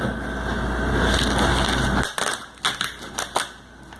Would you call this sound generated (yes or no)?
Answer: no